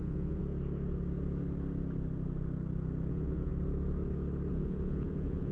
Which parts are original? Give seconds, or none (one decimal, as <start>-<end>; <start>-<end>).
0.4-3.1; 3.5-4.5